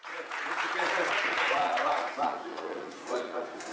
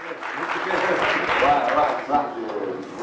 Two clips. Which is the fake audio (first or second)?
first